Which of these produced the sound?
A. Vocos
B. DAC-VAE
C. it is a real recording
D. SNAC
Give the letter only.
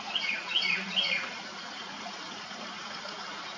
A